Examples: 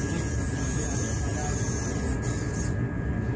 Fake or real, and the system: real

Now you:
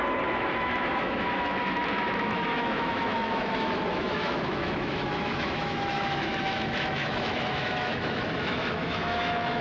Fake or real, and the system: fake, autoencoder, DAC-VAE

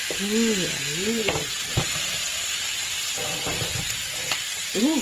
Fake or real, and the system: fake, vocoder, BigVGAN v2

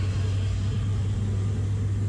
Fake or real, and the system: real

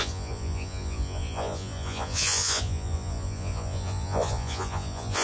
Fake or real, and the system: fake, vocoder, Vocos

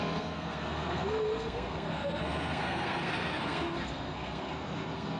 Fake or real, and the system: fake, codec, SNAC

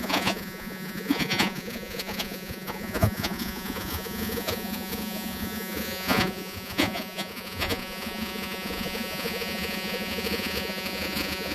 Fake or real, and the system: fake, vocoder, Vocos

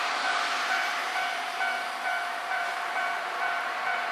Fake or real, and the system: fake, vocoder, BigVGAN v2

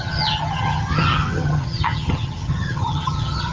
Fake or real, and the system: fake, vocoder, HiFi-GAN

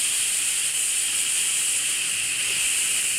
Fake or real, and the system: fake, vocoder, BigVGAN v2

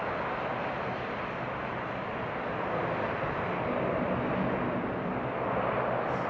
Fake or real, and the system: real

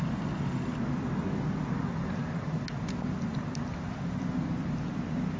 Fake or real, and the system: real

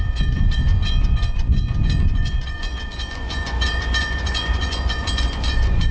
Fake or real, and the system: fake, vocoder, Vocos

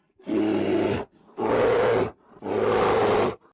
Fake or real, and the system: real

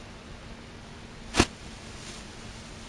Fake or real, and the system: real